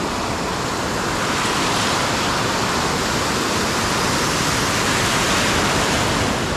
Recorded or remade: recorded